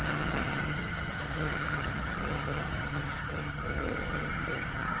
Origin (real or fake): fake